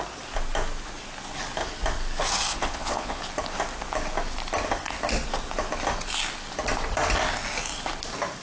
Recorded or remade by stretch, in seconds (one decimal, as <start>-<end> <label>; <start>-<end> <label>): 0.0-2.5 recorded; 2.5-3.2 remade; 3.2-8.4 recorded